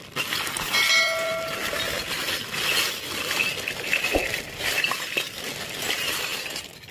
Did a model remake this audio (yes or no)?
no